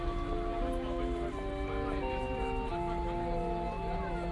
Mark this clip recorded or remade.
recorded